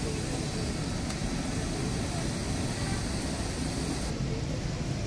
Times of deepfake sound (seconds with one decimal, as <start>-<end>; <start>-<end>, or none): none